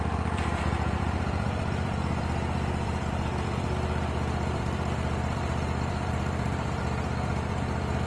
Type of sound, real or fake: fake